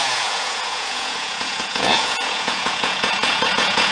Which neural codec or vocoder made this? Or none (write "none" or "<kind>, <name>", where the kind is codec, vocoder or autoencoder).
vocoder, Vocos